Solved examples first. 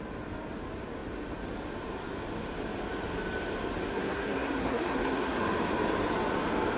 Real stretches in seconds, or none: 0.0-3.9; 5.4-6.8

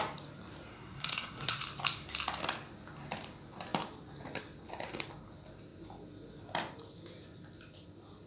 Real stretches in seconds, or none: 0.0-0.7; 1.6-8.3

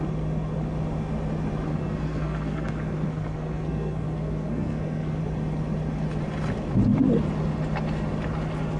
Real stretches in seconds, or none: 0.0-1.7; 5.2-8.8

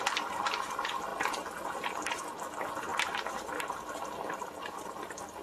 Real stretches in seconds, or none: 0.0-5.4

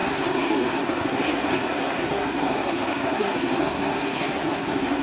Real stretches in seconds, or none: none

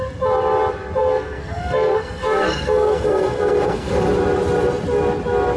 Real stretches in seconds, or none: 0.0-1.0; 3.9-5.6

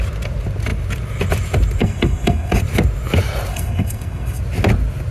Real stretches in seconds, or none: 0.0-1.8; 2.6-3.5; 4.4-5.1

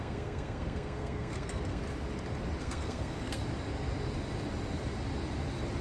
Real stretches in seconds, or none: 1.8-2.6; 3.4-5.8